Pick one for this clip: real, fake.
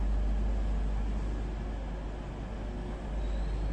real